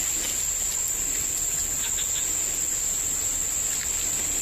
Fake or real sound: real